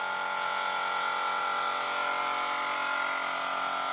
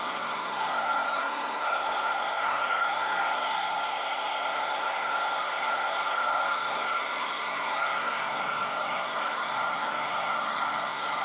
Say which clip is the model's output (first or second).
second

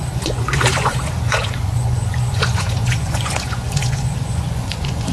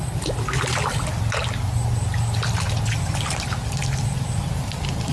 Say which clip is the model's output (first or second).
first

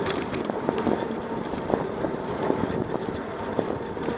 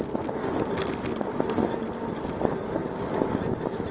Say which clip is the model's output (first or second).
first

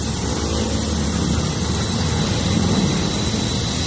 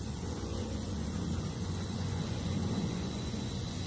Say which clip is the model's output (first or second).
second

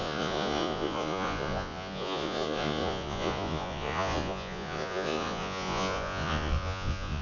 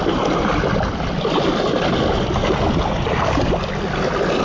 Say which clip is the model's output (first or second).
first